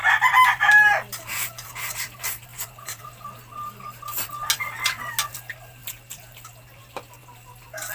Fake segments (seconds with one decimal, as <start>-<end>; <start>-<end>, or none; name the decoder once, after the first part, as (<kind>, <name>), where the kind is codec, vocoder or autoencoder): none